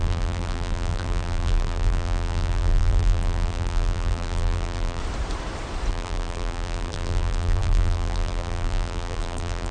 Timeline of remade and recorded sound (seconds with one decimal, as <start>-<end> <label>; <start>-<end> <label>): 0.0-5.0 remade; 5.0-5.9 recorded; 5.9-9.7 remade